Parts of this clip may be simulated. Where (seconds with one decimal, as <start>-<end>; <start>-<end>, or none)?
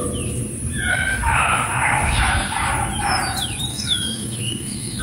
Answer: 0.9-2.2; 3.7-5.0